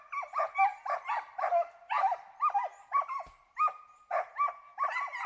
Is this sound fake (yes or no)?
yes